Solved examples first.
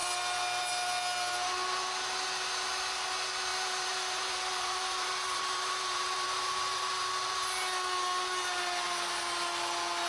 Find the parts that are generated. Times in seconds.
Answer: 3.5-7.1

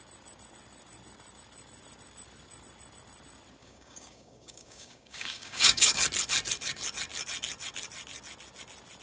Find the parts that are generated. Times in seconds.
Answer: 3.6-6.0

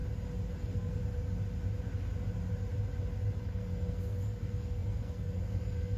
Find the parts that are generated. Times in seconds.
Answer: 0.6-1.0; 3.4-6.0